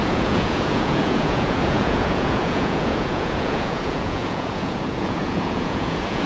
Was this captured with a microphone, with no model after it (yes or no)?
no